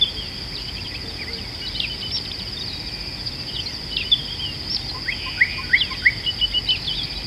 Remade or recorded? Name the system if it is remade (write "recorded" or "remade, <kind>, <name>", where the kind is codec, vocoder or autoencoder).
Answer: recorded